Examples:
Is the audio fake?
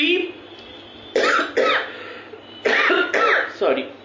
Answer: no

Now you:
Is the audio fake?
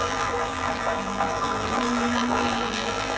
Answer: yes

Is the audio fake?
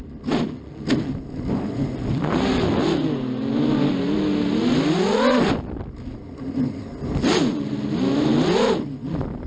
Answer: no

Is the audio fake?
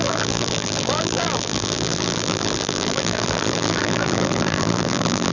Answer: yes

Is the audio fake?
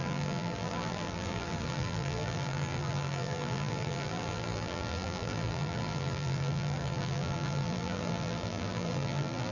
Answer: yes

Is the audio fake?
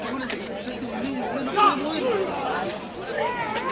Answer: no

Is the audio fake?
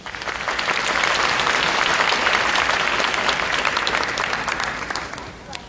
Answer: yes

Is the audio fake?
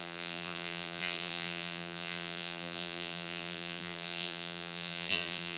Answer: yes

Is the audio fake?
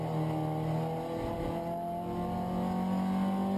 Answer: no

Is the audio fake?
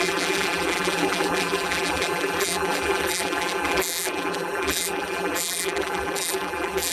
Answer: yes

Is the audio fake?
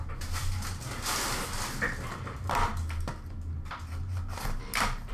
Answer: no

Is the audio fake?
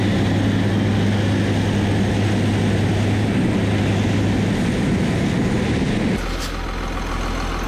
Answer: no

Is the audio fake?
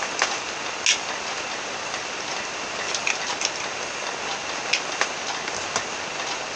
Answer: no